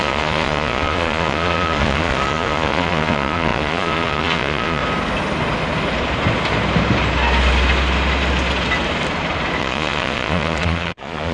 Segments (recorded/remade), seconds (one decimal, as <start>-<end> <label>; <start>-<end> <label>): 0.0-4.8 remade; 4.8-9.6 recorded; 9.6-11.3 remade